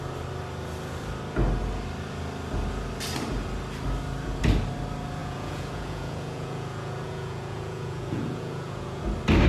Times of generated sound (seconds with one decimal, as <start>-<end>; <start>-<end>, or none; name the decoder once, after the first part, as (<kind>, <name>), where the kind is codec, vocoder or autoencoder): 5.2-9.0 (vocoder, Vocos)